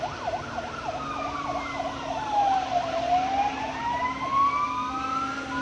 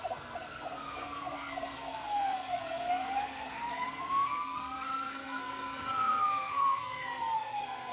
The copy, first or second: second